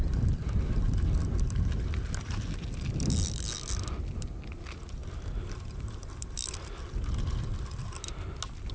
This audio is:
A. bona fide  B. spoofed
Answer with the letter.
A